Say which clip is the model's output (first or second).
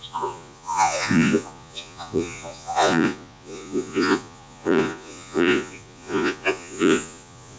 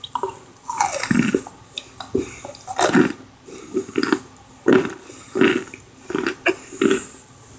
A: first